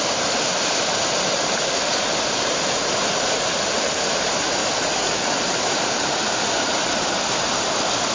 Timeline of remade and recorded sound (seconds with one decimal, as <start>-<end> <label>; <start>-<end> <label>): 0.0-4.6 remade; 4.6-7.6 recorded; 7.6-8.1 remade